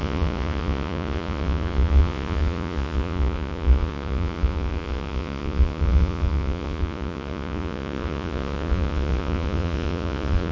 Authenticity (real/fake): fake